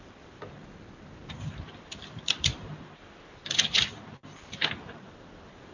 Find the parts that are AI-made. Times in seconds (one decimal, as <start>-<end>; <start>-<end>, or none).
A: 0.0-5.7